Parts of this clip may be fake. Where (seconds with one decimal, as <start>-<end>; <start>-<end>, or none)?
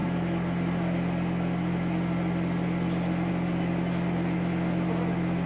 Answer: none